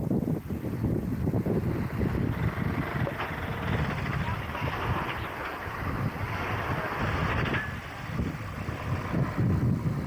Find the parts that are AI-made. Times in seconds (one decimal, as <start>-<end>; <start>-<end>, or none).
5.4-6.6